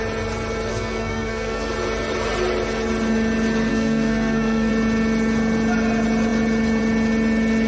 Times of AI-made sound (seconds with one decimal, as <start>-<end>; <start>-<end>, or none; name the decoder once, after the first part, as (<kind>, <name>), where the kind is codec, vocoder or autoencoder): 0.7-1.7 (codec, SNAC); 3.7-4.7